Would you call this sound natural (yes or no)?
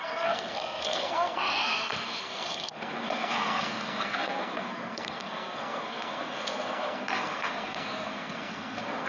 no